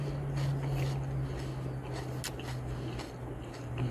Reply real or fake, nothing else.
real